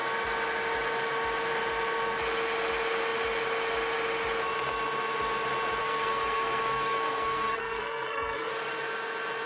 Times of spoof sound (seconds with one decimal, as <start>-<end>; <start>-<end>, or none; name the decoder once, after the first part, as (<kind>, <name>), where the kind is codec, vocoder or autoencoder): 5.8-8.5 (codec, SNAC)